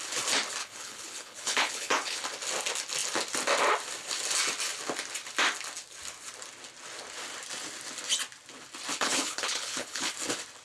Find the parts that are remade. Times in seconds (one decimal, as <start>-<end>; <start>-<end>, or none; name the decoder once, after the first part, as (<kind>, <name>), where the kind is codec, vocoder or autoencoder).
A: 0.6-2.2 (codec, HILCodec); 8.9-10.1